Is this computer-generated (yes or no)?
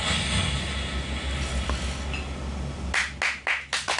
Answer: no